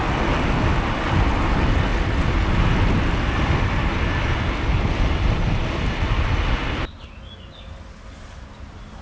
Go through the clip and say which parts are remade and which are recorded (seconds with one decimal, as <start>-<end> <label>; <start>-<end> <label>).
0.0-9.0 recorded

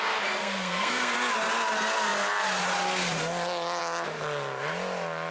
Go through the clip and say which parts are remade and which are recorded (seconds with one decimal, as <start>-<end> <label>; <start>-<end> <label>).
0.0-0.4 recorded; 0.4-1.1 remade; 1.1-5.3 recorded